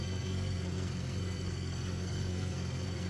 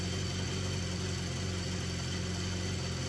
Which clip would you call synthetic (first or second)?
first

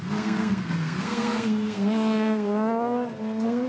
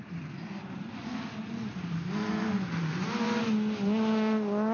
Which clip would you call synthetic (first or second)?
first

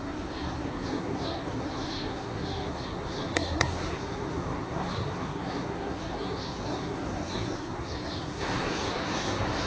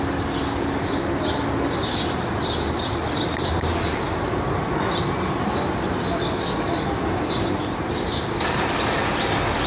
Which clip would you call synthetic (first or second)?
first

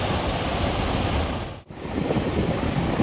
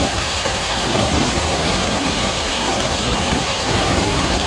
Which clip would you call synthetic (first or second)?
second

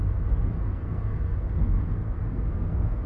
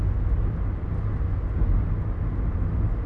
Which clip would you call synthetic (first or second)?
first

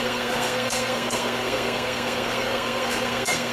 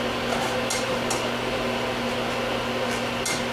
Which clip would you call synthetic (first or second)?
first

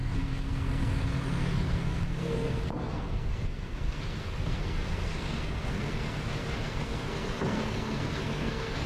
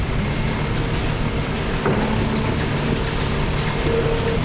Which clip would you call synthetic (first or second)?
first